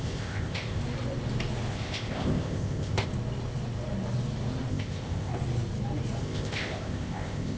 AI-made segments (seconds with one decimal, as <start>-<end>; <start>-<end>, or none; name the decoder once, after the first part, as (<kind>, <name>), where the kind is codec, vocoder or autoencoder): 0.0-0.8 (codec, ZipCodec); 1.7-3.1; 4.7-5.3; 6.2-7.6